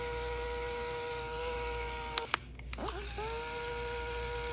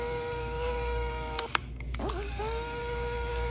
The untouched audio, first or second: first